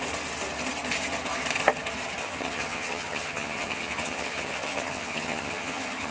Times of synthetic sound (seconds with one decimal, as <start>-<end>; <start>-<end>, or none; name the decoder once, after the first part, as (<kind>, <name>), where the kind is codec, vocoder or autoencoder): 2.2-6.1 (vocoder, HiFi-GAN)